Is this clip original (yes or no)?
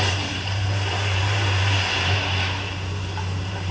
no